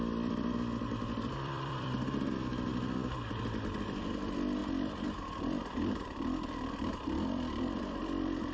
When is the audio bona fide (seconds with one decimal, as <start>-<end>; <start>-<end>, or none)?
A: none